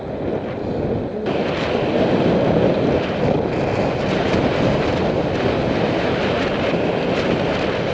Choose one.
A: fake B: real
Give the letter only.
B